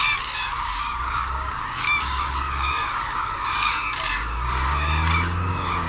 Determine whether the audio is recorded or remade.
remade